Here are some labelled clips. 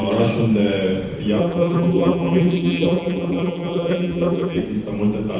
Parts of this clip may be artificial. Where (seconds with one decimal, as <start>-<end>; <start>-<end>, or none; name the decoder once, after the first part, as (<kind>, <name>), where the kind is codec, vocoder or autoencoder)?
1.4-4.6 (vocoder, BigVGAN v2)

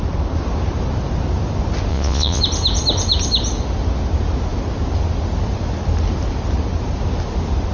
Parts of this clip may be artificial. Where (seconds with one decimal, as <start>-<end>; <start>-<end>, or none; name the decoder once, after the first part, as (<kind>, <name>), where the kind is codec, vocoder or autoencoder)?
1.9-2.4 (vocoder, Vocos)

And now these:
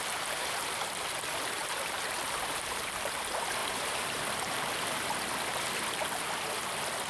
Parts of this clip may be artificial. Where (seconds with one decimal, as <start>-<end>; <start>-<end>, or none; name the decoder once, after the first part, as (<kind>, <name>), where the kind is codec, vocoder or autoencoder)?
1.6-3.2 (vocoder, BigVGAN v2); 3.6-4.7